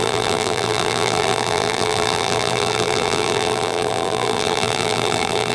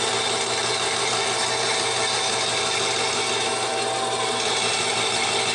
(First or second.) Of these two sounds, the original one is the second